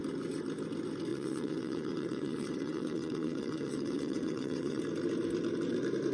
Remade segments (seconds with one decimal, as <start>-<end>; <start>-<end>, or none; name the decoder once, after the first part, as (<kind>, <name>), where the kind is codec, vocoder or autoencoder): 1.1-4.8 (vocoder, WaveNeXt)